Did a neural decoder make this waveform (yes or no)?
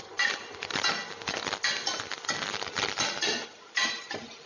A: no